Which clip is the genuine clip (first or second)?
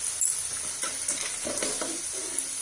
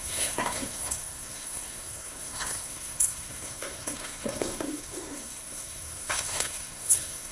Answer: first